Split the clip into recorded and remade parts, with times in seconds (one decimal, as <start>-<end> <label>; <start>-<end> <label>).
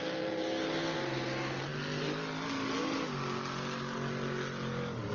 0.0-5.1 recorded